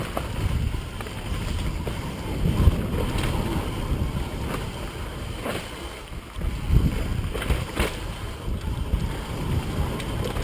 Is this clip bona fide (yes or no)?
yes